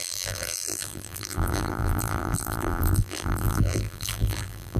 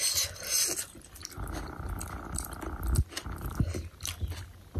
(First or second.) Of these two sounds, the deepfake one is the first